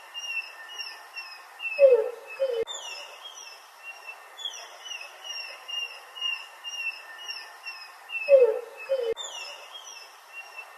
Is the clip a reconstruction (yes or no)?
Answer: no